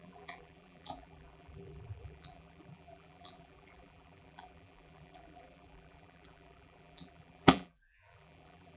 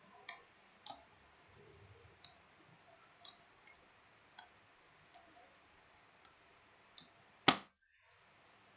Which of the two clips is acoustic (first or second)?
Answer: second